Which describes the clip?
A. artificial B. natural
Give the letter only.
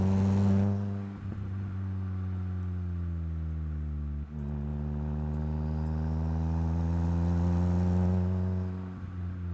B